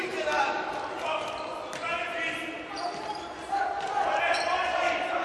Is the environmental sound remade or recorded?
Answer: recorded